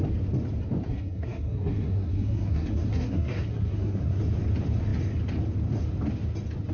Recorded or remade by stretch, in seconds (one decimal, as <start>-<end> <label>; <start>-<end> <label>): 0.0-0.9 recorded; 0.9-4.2 remade; 4.2-6.7 recorded